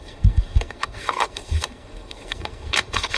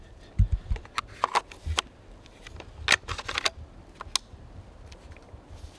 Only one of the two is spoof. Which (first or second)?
first